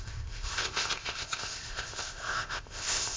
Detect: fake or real fake